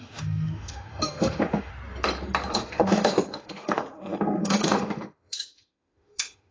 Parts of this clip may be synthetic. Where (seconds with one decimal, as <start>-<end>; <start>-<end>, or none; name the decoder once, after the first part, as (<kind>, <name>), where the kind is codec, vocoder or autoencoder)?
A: 0.0-1.7 (autoencoder, DAC-VAE); 2.5-6.5